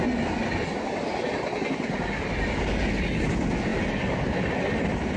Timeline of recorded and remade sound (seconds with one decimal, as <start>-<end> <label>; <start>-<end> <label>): 0.0-5.2 recorded